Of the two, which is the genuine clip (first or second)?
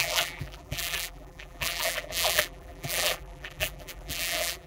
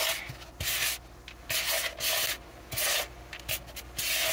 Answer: second